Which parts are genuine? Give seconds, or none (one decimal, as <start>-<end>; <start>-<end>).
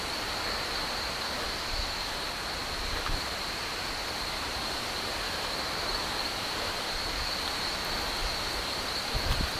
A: 0.0-2.6; 7.1-8.2